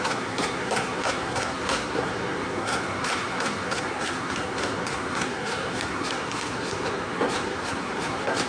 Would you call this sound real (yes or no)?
no